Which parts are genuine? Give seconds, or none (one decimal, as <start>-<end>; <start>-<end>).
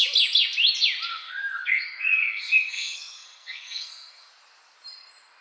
0.0-1.1; 4.3-5.4